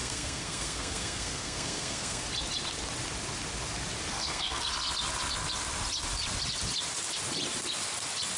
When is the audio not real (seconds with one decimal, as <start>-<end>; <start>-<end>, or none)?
0.0-2.2; 4.1-4.7